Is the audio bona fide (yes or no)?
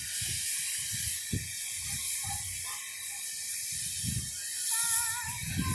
yes